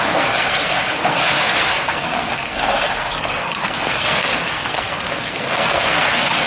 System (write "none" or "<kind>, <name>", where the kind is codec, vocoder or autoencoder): codec, SNAC